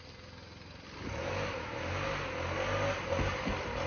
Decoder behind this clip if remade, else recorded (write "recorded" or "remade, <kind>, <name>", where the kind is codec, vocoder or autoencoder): recorded